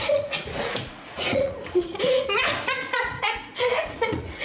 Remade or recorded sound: remade